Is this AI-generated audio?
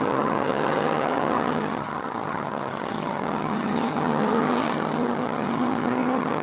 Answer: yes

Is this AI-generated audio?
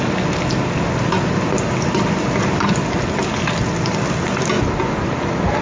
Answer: no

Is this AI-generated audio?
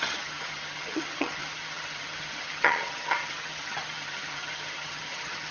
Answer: yes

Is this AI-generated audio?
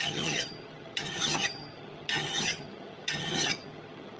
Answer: yes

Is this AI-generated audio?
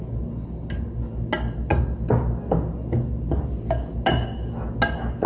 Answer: no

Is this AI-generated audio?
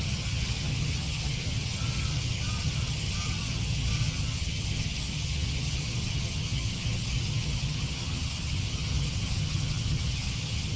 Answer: yes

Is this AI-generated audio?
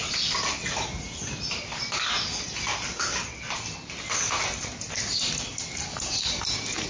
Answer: no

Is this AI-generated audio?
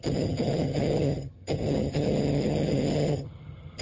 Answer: yes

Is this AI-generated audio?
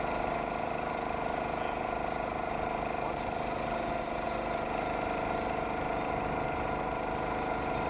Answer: no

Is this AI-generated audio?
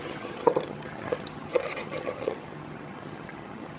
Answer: yes